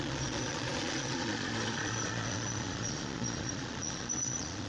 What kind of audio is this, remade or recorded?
remade